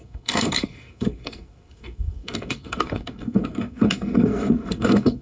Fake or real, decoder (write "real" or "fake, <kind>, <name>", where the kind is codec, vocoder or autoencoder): fake, codec, SNAC